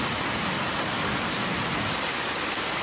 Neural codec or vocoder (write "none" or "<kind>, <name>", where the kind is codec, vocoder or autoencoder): none